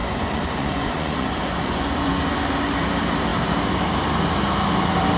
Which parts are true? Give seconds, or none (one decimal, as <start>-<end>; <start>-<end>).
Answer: 2.2-5.2